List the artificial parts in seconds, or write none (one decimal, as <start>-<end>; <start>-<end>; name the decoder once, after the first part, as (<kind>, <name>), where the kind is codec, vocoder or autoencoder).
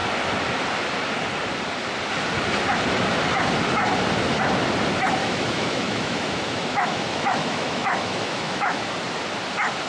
5.2-8.9 (autoencoder, DAC-VAE)